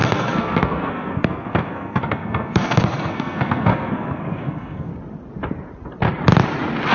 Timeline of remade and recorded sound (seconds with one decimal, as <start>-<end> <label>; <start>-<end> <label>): 0.0-4.9 remade; 4.9-6.9 recorded